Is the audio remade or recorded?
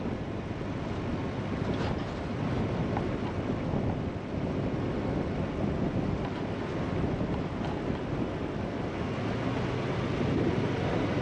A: recorded